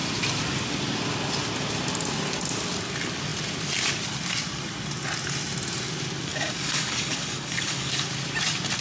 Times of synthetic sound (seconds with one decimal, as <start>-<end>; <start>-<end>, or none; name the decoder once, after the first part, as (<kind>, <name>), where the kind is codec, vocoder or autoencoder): 6.3-7.9 (codec, DAC)